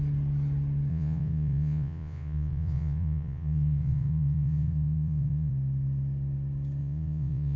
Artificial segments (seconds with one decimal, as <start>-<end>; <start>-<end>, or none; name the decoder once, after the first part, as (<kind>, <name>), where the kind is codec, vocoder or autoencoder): 0.9-5.5 (vocoder, Vocos); 6.8-7.6